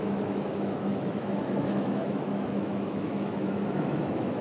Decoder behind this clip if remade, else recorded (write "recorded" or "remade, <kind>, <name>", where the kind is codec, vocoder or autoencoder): remade, autoencoder, DAC-VAE